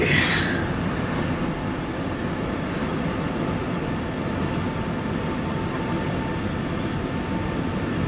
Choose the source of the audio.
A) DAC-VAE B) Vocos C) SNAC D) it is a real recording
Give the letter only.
D